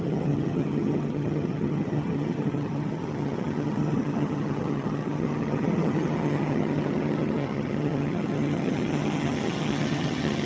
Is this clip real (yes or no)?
no